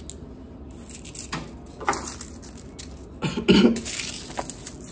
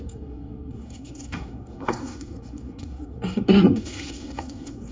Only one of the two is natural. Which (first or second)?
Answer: first